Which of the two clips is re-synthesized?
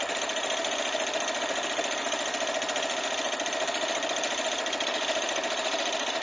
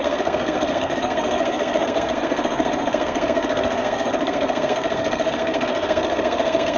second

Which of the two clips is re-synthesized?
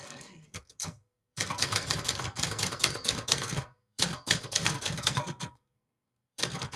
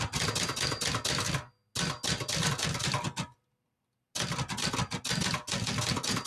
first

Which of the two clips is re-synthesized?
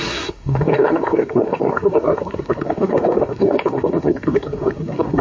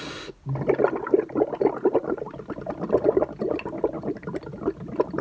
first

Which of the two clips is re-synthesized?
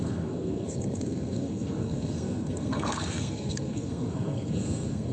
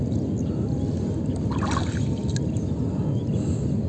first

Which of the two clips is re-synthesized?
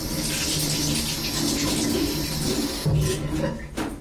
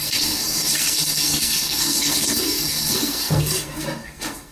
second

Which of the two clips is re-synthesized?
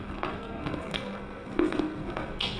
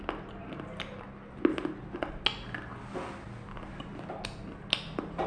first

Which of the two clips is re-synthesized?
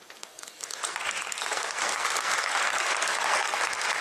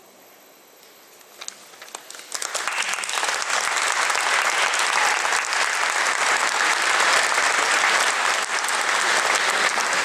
first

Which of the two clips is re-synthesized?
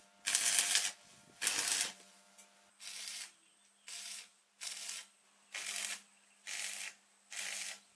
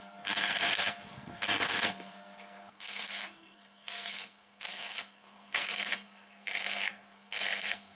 second